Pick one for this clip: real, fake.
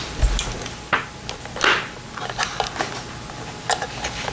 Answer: real